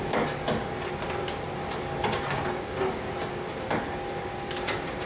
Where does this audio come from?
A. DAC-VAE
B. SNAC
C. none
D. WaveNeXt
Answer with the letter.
C